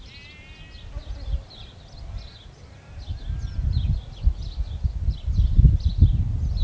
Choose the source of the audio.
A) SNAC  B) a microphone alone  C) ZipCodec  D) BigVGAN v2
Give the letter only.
B